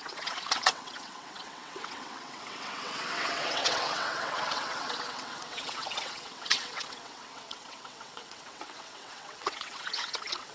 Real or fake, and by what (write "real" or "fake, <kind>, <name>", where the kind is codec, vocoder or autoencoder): fake, vocoder, WaveNeXt